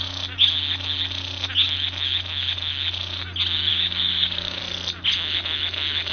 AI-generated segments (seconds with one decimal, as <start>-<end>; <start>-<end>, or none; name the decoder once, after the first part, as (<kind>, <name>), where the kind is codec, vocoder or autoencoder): 3.7-4.6 (codec, DAC)